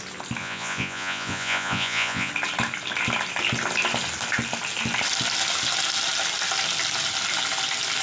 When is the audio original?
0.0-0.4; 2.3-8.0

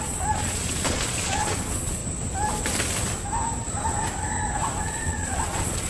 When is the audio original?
2.0-4.8

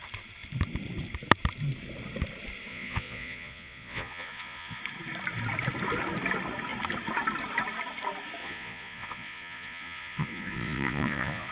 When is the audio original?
0.0-2.7; 4.8-8.4

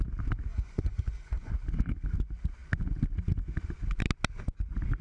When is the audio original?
0.0-0.5; 1.5-5.0

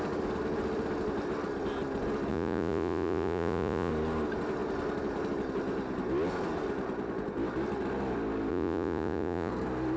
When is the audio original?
0.0-2.3; 3.9-8.5; 9.5-10.0

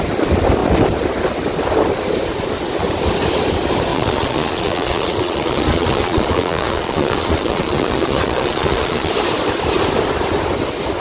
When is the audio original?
0.0-3.9; 9.1-11.0